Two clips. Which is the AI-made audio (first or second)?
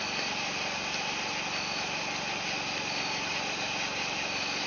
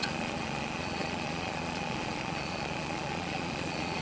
second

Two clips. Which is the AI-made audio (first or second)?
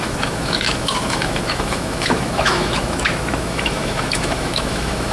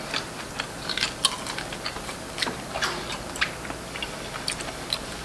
first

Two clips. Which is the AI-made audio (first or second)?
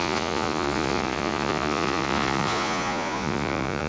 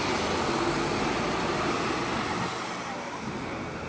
first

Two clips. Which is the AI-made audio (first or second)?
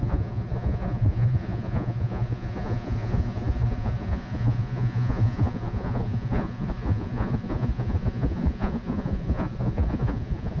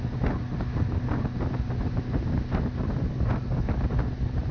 first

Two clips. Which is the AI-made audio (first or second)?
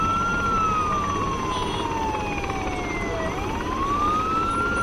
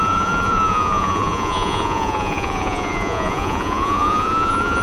second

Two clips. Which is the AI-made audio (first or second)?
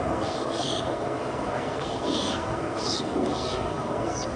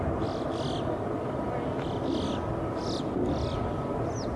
first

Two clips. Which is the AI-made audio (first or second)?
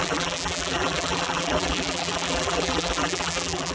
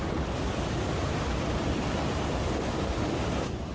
first